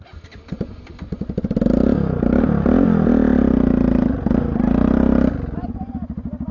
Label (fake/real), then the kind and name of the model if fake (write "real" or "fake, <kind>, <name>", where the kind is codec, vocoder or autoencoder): real